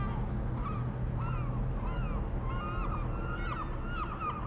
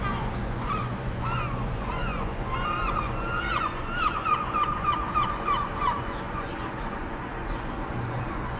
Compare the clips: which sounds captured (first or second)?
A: first